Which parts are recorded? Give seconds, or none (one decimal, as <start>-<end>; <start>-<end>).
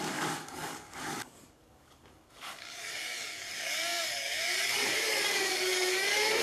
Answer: none